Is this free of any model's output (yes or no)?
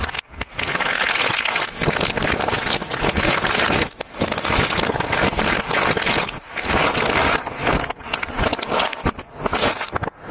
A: yes